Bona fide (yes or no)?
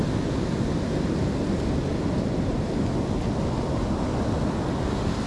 yes